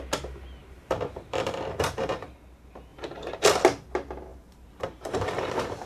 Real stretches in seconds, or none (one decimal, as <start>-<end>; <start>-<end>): 0.0-0.6; 2.3-4.3; 5.5-5.9